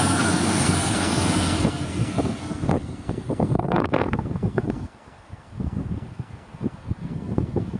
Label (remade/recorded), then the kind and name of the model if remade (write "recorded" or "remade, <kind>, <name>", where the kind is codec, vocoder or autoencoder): remade, codec, SNAC